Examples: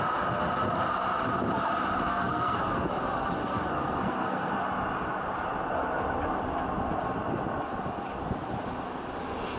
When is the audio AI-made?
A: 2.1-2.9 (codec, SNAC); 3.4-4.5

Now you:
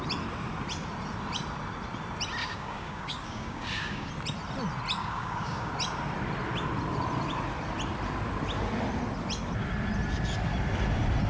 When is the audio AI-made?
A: 2.4-4.1 (codec, DAC); 5.0-5.7

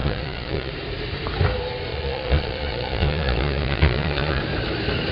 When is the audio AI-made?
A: 0.0-0.7 (vocoder, Vocos); 1.9-4.4

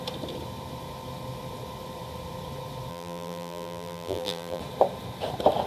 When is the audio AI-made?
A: 2.9-4.6 (vocoder, BigVGAN v2)

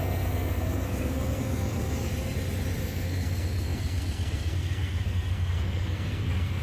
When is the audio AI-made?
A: 0.0-2.1 (codec, SNAC); 2.8-6.6

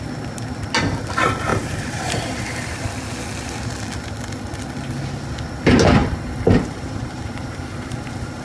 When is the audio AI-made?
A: 1.5-2.8 (vocoder, BigVGAN v2); 6.0-8.4

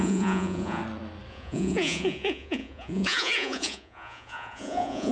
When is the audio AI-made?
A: 0.0-0.8 (vocoder, Vocos); 1.3-5.1